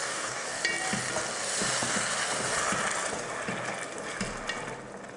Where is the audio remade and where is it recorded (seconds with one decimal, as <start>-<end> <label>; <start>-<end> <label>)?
0.0-0.6 remade; 0.6-5.2 recorded